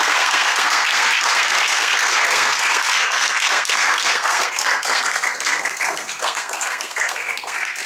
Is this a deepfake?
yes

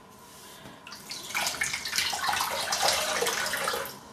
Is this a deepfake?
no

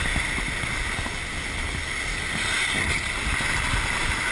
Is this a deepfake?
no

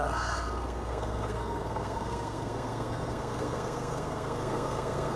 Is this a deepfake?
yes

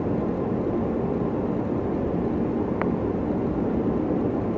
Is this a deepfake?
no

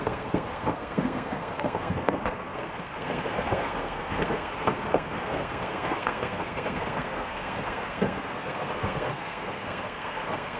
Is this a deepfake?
yes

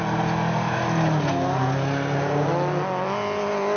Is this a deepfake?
no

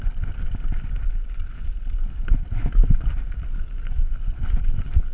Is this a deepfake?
no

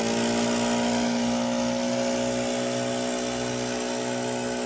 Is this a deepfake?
no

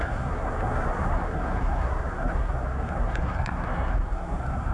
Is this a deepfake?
yes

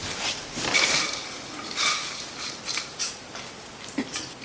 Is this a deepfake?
no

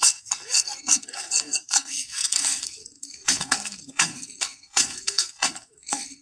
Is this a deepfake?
yes